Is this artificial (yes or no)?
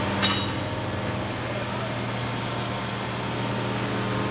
no